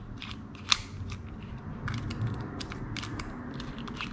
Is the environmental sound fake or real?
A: real